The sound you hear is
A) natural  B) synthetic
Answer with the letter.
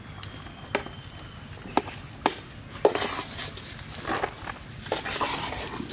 A